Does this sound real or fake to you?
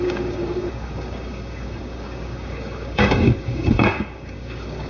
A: fake